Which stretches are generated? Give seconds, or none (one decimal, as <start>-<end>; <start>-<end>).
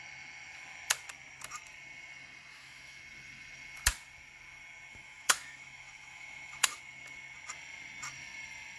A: 2.5-3.0; 4.9-6.8